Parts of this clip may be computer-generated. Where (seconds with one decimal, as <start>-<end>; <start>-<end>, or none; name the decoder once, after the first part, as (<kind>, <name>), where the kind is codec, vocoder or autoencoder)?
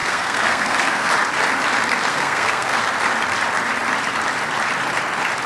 0.0-1.1 (codec, SNAC); 2.1-2.8